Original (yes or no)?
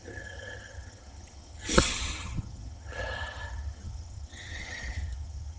no